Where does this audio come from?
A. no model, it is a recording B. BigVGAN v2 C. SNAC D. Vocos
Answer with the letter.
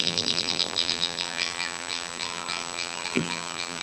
B